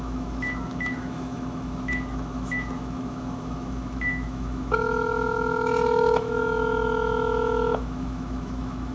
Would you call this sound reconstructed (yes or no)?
yes